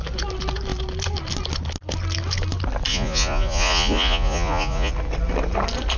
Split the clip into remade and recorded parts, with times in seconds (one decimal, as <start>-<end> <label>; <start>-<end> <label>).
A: 0.0-2.9 recorded; 2.9-4.9 remade; 4.9-6.0 recorded